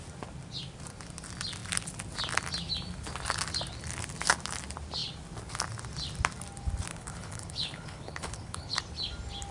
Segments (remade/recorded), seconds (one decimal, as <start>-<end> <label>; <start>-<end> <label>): 0.0-6.9 recorded; 6.9-8.8 remade; 8.8-9.5 recorded